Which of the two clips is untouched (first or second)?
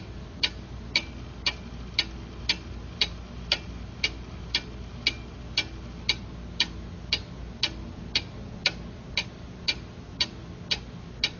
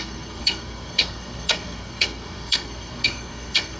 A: first